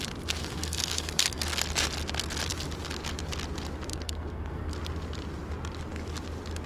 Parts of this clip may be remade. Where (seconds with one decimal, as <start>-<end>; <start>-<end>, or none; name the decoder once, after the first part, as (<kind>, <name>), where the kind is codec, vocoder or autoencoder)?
0.4-1.6 (codec, SNAC); 3.9-4.7